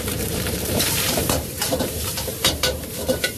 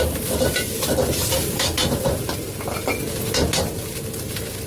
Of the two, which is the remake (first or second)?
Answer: first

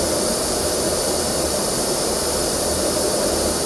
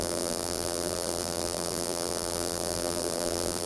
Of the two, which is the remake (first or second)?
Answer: second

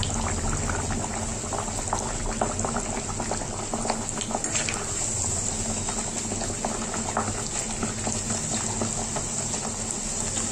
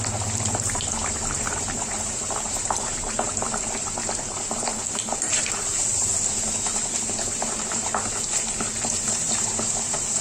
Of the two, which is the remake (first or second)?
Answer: second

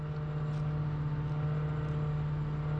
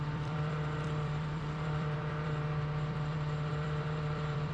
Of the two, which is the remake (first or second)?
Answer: second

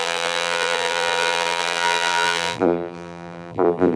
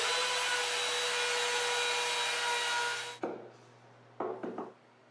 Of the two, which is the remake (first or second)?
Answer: first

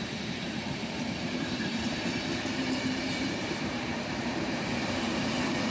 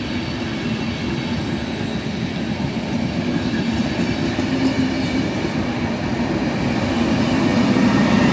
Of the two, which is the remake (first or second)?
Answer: first